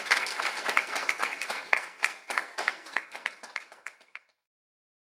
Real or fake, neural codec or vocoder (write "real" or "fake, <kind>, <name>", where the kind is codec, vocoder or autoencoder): fake, codec, SNAC